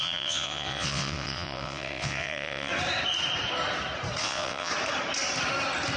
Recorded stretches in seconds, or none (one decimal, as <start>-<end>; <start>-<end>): 2.7-4.2; 4.7-6.0